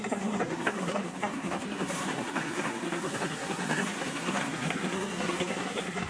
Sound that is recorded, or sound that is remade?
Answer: remade